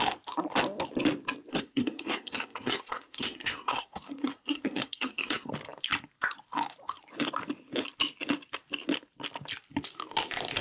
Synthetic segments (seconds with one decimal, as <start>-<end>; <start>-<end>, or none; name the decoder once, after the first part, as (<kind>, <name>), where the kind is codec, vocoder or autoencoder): 1.5-5.5 (codec, SNAC)